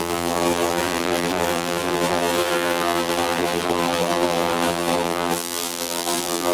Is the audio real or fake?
fake